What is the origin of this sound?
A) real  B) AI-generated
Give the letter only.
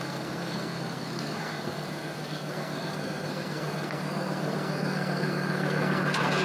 B